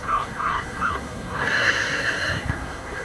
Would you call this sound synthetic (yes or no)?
yes